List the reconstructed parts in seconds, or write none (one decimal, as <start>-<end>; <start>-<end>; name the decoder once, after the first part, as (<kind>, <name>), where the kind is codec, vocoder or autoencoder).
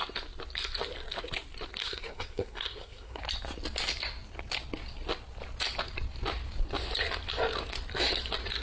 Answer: 1.8-3.2 (codec, SNAC)